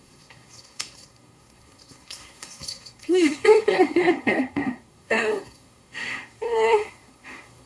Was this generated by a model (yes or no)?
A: yes